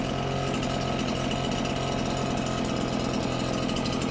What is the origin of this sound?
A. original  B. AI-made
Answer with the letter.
A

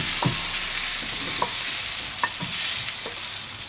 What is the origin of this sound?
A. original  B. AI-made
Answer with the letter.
A